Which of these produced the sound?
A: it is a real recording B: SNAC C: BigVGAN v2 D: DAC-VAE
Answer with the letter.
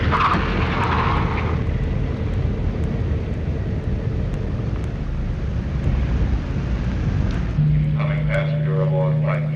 A